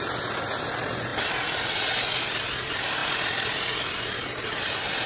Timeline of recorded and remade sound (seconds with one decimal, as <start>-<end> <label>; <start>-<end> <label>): 0.0-5.1 recorded